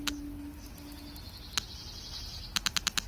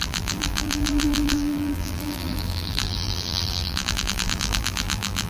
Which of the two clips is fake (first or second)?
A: second